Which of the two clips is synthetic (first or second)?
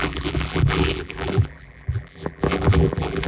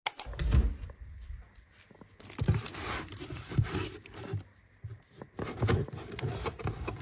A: first